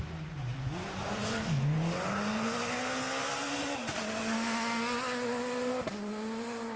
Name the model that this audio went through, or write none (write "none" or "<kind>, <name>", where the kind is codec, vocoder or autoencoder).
none